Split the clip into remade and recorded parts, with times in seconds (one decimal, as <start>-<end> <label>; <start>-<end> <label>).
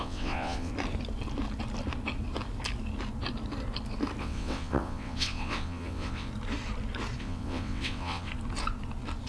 0.0-0.7 remade; 0.7-4.2 recorded; 4.2-6.3 remade; 6.3-7.2 recorded; 7.2-8.3 remade; 8.3-9.3 recorded